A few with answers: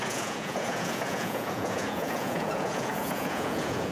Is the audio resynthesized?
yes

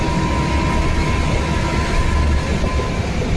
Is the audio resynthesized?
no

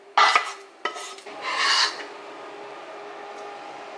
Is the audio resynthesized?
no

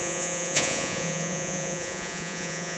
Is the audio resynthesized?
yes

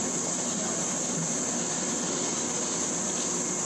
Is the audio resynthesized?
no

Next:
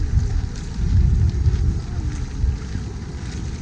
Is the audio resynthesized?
no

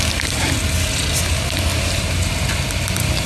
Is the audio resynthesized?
no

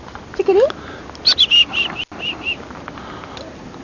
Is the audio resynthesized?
no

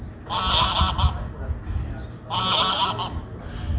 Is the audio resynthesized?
no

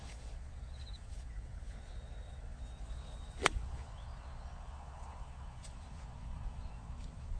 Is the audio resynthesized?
yes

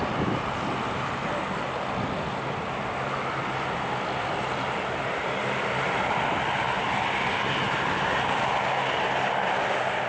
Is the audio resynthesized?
no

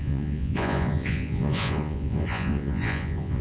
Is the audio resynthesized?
yes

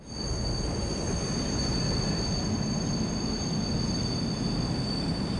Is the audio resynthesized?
no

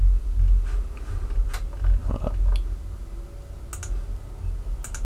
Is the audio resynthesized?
no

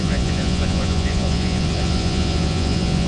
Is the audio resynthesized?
yes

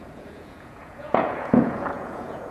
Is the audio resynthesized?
yes